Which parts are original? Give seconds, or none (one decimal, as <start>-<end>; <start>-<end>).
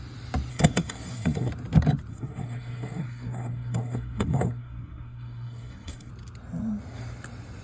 0.0-0.5; 1.5-2.1; 6.1-7.6